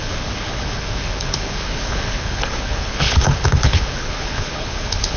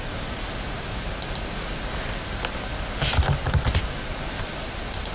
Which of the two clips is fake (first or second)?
first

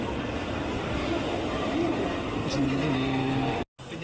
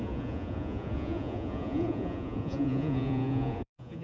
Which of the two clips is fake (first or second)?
second